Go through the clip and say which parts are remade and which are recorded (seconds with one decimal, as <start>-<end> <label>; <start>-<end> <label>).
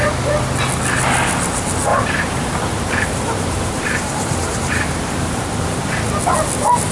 0.0-1.9 recorded; 1.9-6.0 remade; 6.0-6.9 recorded